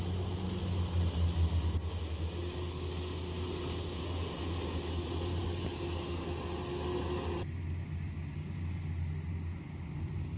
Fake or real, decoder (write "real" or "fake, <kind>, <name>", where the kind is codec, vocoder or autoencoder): real